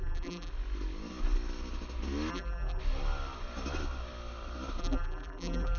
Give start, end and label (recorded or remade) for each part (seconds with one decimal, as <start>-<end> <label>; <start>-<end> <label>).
0.0-0.5 remade; 0.5-2.3 recorded; 2.3-2.8 remade; 2.8-4.8 recorded; 4.8-5.8 remade